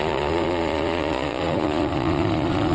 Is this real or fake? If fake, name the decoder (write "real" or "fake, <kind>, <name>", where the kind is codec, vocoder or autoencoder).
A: fake, vocoder, Vocos